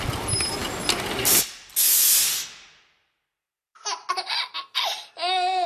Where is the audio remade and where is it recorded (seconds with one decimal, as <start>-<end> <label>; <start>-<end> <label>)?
0.0-5.7 recorded